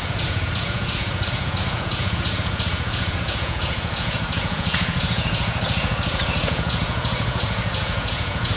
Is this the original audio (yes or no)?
no